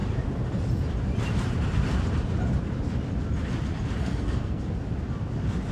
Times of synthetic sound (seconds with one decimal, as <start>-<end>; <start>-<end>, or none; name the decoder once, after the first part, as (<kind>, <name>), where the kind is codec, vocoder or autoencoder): 4.0-4.6 (codec, SNAC)